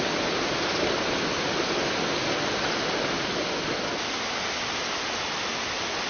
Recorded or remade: recorded